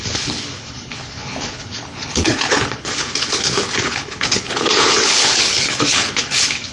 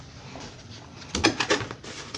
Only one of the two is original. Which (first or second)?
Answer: second